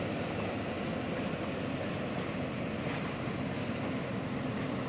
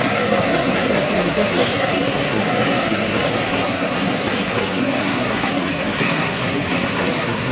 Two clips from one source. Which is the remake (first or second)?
second